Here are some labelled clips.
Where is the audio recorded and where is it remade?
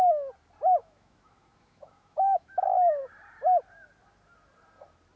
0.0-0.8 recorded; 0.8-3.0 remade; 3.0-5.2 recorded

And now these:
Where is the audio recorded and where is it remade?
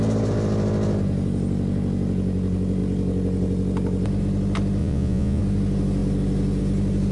0.0-4.8 recorded; 4.8-5.4 remade; 5.4-7.1 recorded